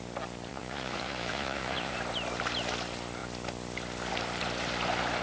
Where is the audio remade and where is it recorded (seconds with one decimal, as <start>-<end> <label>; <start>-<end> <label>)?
0.0-0.5 recorded; 0.5-1.9 remade; 1.9-5.2 recorded